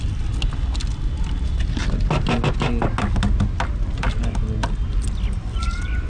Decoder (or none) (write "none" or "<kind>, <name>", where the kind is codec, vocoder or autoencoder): none